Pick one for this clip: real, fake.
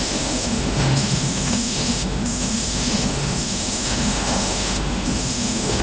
fake